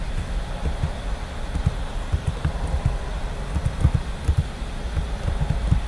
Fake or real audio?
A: real